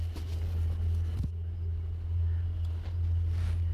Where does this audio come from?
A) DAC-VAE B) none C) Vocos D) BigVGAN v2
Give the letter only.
B